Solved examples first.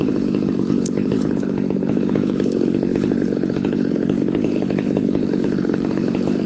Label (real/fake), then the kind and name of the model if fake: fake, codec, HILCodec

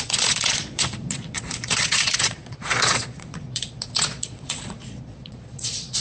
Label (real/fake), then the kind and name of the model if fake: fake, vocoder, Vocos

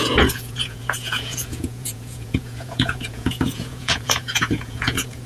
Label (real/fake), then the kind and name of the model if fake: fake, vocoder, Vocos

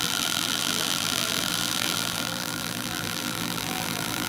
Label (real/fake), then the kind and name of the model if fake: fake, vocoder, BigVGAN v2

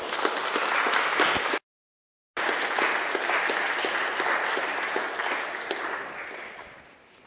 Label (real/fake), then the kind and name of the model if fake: real